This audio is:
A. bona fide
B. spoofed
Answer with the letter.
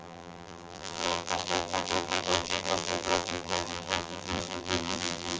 B